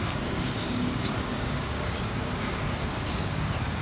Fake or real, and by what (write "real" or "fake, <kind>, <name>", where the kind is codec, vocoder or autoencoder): fake, codec, DAC